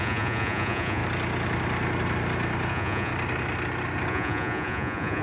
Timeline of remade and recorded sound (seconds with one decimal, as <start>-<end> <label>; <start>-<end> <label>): 0.0-1.0 remade; 1.0-2.7 recorded; 2.7-3.1 remade; 3.1-4.1 recorded; 4.1-5.2 remade